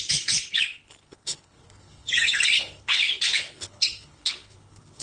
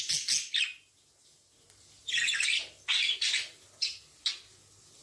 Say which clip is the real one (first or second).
second